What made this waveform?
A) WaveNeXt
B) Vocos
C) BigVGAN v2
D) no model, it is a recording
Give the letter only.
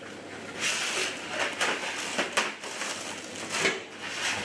D